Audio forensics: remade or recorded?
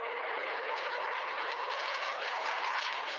remade